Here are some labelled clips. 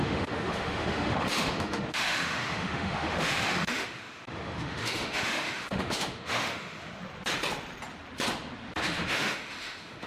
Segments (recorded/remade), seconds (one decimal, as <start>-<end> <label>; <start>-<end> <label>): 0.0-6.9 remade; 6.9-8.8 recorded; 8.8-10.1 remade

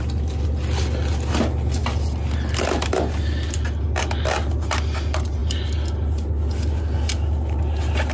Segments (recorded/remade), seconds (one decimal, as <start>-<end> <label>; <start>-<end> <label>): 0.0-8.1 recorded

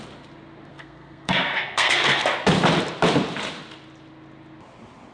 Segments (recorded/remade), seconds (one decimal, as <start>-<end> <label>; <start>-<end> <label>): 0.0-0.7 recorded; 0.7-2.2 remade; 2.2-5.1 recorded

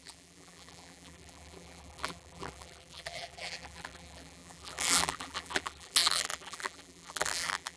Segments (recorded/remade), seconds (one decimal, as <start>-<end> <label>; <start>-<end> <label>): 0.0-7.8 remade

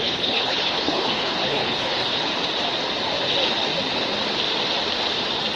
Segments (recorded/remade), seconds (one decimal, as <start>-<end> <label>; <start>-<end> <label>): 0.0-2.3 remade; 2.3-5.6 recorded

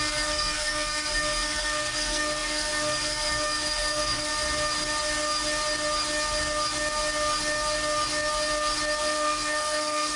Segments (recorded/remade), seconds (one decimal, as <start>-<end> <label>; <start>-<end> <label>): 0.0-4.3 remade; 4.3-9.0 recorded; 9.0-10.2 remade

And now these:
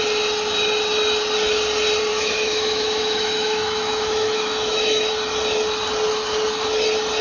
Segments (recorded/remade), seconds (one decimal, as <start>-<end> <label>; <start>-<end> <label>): 0.0-2.1 recorded; 2.1-5.1 remade; 5.1-7.2 recorded